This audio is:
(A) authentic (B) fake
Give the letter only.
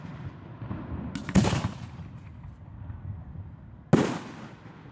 A